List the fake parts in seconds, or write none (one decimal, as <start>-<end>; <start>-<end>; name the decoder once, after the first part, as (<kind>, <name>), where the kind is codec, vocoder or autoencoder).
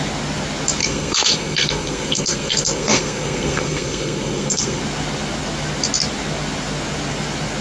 0.8-4.8 (codec, SNAC)